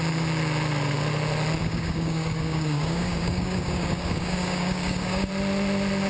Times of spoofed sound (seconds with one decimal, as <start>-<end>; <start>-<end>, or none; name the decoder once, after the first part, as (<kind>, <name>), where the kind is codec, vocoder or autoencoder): 1.6-5.3 (codec, DAC)